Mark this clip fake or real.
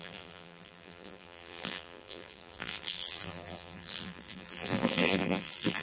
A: fake